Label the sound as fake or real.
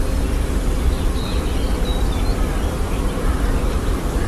fake